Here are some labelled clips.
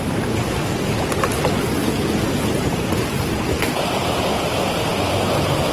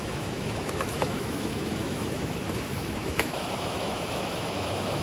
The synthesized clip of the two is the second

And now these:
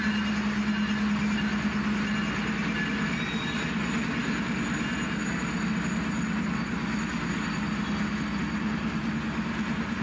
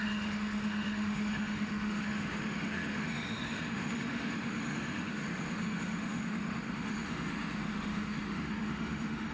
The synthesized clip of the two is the second